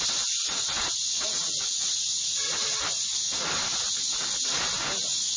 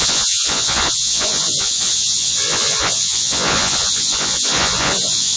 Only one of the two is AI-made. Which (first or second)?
second